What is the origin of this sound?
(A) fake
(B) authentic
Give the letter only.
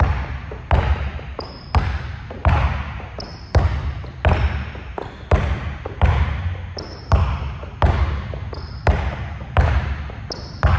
B